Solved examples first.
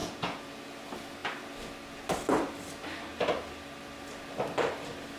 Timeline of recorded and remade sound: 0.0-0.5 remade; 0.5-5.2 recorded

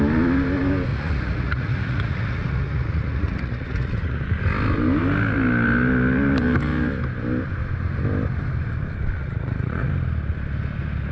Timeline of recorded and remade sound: 0.0-0.9 recorded; 0.9-4.2 remade; 4.2-9.2 recorded; 9.2-9.9 remade; 9.9-11.1 recorded

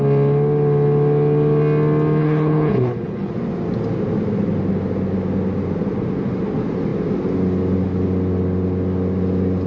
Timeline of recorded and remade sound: 0.0-2.2 recorded; 2.2-3.3 remade; 3.3-9.7 recorded